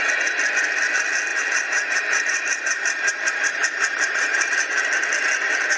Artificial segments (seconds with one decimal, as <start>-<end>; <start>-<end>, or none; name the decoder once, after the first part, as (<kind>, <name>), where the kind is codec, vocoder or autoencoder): 1.3-4.8 (vocoder, BigVGAN v2)